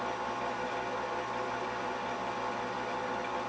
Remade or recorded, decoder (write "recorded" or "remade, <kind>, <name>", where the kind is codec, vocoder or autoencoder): recorded